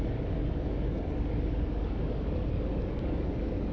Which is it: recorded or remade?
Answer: remade